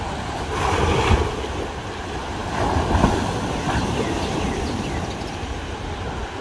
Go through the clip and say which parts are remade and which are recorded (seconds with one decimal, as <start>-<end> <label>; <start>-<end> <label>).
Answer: 0.0-6.4 recorded